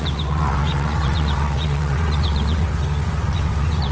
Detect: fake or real fake